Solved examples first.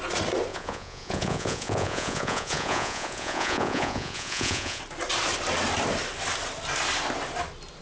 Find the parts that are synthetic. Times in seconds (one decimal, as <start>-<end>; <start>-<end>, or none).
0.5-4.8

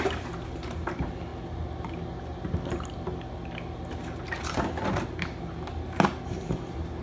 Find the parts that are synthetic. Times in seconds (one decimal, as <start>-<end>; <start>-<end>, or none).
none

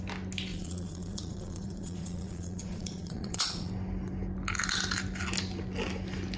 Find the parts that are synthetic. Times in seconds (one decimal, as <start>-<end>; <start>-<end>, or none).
0.5-3.7